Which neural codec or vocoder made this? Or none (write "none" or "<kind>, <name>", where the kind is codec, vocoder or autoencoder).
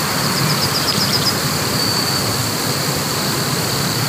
vocoder, BigVGAN v2